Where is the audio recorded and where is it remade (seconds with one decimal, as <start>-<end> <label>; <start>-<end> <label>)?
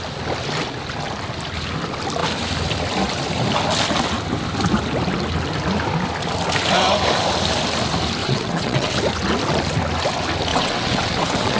0.0-8.2 recorded; 8.2-9.0 remade; 9.0-10.5 recorded; 10.5-11.6 remade